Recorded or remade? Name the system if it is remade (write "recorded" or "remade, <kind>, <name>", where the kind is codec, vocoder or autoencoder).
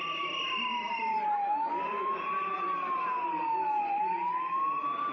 recorded